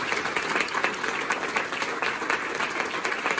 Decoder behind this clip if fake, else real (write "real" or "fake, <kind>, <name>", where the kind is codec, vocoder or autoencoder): real